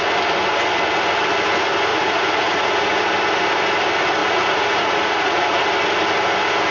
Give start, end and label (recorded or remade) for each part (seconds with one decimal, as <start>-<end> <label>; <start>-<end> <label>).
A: 0.0-1.9 recorded; 1.9-3.1 remade; 3.1-4.2 recorded; 4.2-5.6 remade; 5.6-6.7 recorded